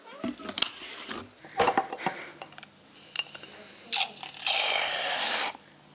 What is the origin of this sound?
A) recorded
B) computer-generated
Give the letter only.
A